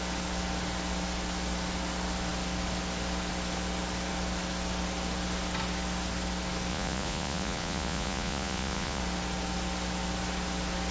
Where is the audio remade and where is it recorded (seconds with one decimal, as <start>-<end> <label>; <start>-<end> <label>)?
0.0-6.7 recorded; 6.7-9.0 remade; 9.0-10.9 recorded